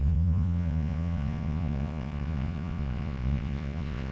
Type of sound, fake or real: fake